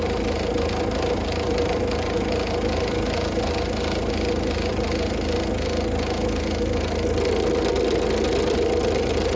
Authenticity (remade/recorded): recorded